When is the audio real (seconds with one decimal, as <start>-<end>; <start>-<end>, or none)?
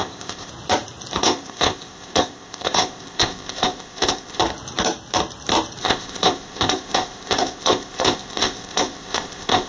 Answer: 0.5-1.2; 4.4-5.8